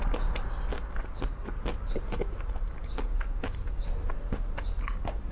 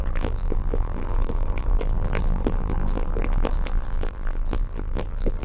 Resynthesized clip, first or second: second